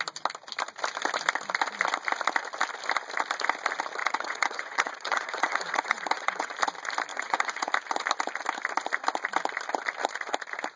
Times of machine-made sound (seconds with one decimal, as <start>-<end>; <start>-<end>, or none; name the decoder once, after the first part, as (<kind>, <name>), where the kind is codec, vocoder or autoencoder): 4.0-6.5 (vocoder, WaveNeXt); 7.1-7.7

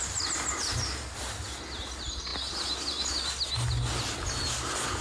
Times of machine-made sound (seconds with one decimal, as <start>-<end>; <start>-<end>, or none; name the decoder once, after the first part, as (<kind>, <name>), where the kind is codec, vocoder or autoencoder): none

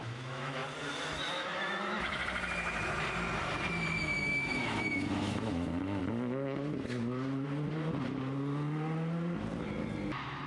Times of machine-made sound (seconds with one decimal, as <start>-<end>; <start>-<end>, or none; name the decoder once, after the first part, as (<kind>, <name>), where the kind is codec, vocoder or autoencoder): 0.0-0.6 (autoencoder, DAC-VAE); 1.3-2.2; 4.0-6.0

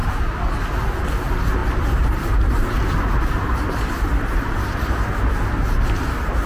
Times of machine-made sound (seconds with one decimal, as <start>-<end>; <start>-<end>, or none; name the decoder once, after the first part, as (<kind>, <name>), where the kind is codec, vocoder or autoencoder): 1.6-4.9 (vocoder, BigVGAN v2)